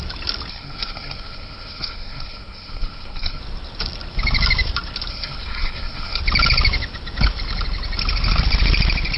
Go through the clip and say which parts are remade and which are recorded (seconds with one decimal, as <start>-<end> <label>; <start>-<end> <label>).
0.0-0.5 recorded; 0.5-3.4 remade; 3.4-5.1 recorded; 5.1-6.2 remade; 6.2-9.2 recorded